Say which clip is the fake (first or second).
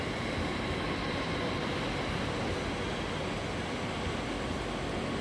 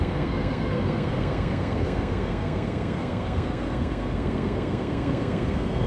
second